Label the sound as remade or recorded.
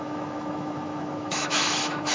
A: remade